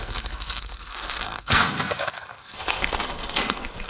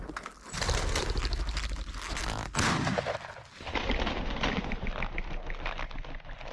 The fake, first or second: first